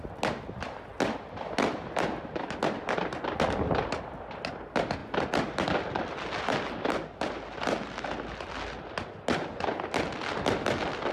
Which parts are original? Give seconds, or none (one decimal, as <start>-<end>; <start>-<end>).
0.0-11.1